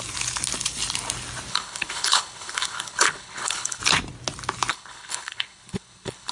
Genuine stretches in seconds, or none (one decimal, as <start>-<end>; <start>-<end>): 0.0-1.5; 3.8-4.7